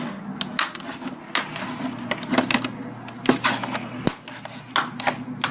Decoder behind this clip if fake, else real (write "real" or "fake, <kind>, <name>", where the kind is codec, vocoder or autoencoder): real